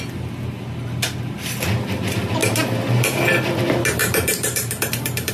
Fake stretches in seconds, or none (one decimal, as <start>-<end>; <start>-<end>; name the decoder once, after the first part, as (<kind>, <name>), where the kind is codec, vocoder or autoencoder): 4.0-5.3 (vocoder, BigVGAN v2)